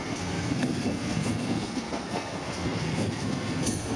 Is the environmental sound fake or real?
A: fake